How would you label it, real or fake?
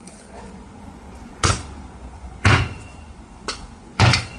fake